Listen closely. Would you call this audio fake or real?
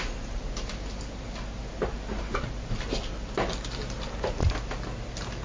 real